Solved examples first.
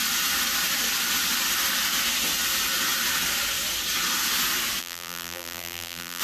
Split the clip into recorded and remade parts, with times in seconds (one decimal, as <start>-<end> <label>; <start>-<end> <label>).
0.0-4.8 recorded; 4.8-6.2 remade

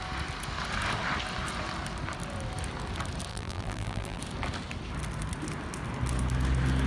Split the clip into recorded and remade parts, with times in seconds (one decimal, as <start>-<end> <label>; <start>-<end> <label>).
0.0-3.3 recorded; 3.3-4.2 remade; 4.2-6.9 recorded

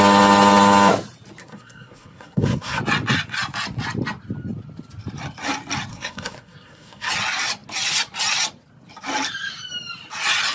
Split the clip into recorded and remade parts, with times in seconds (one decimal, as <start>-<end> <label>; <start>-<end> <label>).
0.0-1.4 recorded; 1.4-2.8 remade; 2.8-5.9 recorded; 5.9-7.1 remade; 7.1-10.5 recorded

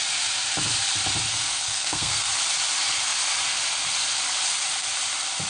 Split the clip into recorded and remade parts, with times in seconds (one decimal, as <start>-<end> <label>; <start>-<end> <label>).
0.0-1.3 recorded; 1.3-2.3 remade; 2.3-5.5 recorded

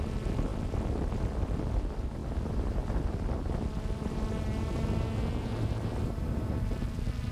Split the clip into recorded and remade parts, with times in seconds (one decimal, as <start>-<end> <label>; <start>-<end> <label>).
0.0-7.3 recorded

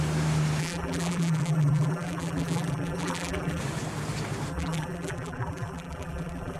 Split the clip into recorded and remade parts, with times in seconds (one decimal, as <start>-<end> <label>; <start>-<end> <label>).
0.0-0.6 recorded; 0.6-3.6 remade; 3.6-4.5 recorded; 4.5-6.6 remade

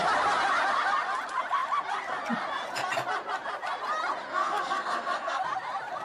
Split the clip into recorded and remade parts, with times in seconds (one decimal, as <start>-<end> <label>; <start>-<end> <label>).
0.0-4.3 recorded; 4.3-5.4 remade; 5.4-6.0 recorded

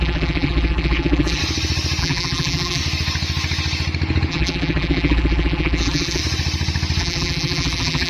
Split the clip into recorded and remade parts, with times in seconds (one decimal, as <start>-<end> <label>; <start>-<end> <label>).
0.0-1.4 remade; 1.4-2.0 recorded; 2.0-2.8 remade; 2.8-4.3 recorded; 4.3-6.2 remade; 6.2-7.0 recorded; 7.0-8.1 remade